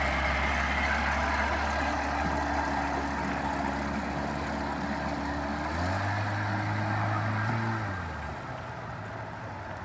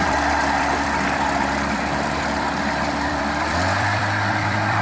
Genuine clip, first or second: first